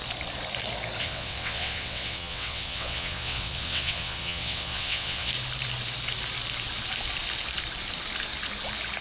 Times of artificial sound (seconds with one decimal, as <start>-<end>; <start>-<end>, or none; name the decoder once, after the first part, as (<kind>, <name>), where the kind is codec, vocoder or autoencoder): 1.0-5.3 (vocoder, WaveNeXt)